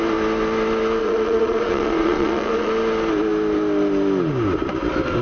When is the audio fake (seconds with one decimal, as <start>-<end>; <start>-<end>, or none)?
1.0-2.7